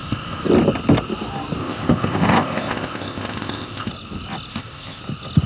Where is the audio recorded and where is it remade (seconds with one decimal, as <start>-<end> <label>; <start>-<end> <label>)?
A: 0.0-0.5 remade; 0.5-1.6 recorded; 1.6-3.9 remade; 3.9-4.5 recorded; 4.5-5.0 remade; 5.0-5.5 recorded